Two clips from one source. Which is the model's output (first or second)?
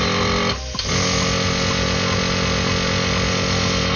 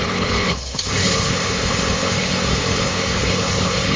second